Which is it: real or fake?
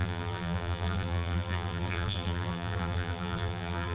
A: fake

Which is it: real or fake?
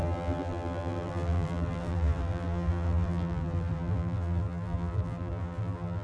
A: fake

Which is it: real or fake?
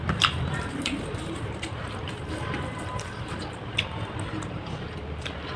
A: fake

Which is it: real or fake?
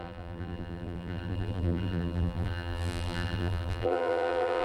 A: fake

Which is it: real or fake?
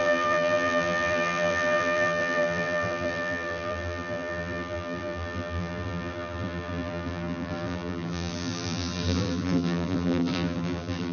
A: fake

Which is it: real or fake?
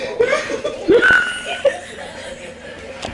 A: real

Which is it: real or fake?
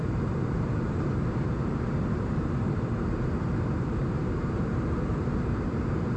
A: fake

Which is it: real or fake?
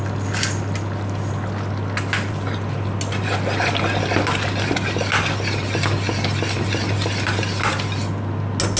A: real